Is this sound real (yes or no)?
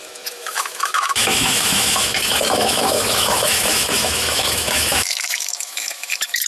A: no